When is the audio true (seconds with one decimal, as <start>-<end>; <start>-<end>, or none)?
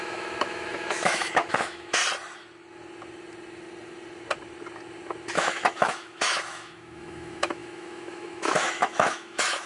2.0-5.3